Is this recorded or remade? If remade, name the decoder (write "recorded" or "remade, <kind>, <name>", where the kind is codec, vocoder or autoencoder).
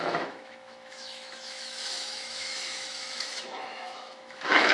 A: remade, autoencoder, DAC-VAE